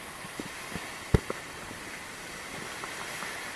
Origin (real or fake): real